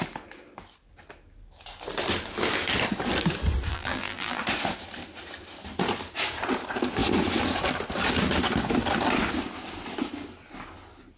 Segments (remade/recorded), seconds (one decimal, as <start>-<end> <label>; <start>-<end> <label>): 0.0-3.7 recorded; 3.7-4.4 remade; 4.4-11.2 recorded